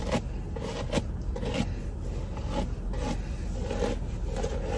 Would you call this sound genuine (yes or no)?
yes